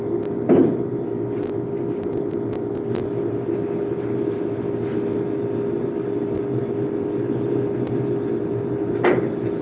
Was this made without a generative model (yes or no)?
yes